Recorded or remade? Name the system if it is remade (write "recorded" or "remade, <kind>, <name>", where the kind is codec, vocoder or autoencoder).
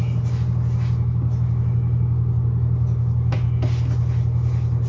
recorded